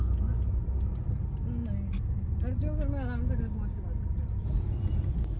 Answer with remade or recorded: recorded